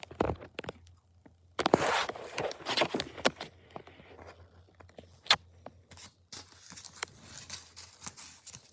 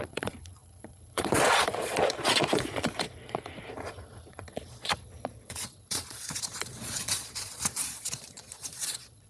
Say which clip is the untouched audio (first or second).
first